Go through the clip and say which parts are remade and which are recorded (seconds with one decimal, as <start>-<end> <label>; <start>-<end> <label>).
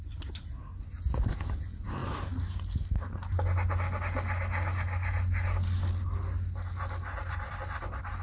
0.0-8.2 recorded